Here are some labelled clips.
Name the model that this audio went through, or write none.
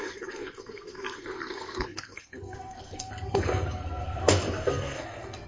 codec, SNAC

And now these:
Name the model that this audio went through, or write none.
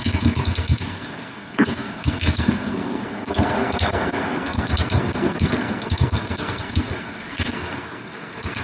codec, SNAC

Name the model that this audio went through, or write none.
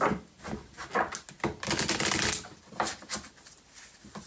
none